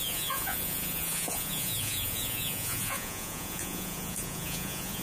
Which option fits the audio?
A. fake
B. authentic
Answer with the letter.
A